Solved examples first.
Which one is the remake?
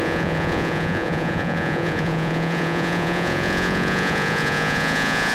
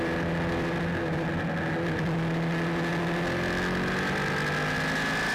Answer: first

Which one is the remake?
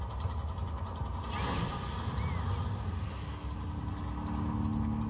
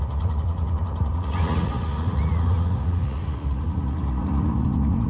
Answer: second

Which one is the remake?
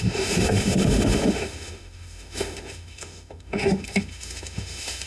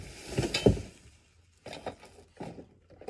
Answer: first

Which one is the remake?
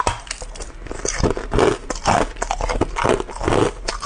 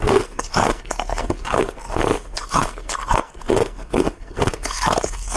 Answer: second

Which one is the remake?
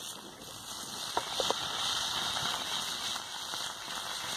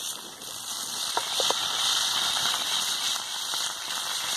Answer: second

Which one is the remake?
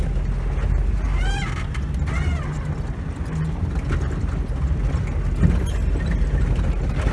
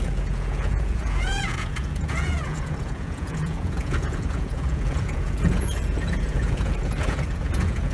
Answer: second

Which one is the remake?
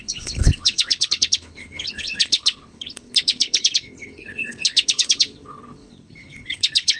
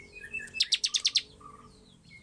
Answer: first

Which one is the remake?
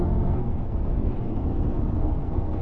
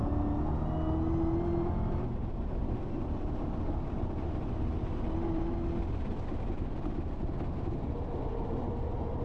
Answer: first